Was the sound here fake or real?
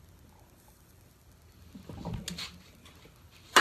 real